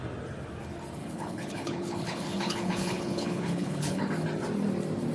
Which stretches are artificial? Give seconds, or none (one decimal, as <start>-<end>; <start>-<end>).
1.0-4.1